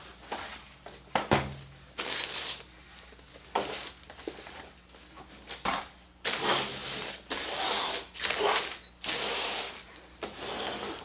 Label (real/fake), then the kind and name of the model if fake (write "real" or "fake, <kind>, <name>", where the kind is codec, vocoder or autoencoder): real